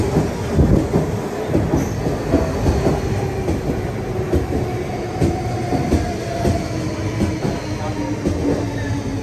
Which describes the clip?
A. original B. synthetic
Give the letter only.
A